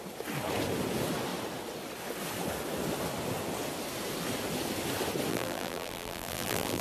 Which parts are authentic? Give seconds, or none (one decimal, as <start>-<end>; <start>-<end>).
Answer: 0.0-5.3